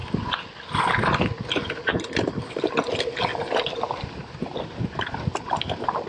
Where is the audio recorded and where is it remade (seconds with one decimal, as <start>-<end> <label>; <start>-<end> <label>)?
0.0-1.9 recorded; 1.9-2.7 remade; 2.7-3.3 recorded; 3.3-6.1 remade